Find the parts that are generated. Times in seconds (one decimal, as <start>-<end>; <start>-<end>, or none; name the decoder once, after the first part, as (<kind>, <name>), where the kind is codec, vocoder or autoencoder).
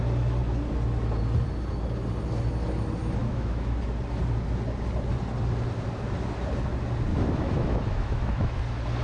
3.2-3.8 (autoencoder, DAC-VAE); 7.1-8.6